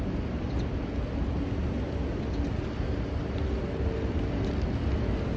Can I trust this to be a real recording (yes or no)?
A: yes